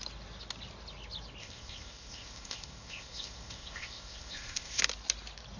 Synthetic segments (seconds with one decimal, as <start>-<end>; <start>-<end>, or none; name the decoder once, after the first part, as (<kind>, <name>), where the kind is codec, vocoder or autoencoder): 1.4-4.8 (codec, ZipCodec)